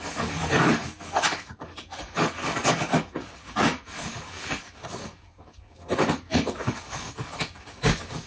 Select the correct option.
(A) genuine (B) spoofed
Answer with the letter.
B